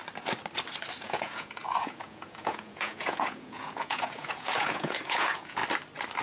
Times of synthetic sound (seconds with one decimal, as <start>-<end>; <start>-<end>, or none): 1.0-5.6